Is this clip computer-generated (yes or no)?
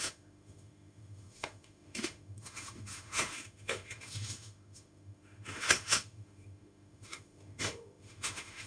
yes